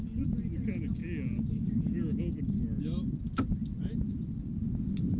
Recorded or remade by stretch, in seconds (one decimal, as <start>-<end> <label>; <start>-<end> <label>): 0.0-5.2 recorded